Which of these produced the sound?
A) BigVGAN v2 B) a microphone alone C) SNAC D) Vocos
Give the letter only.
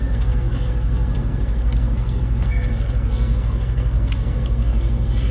C